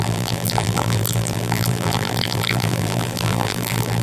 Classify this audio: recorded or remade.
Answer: remade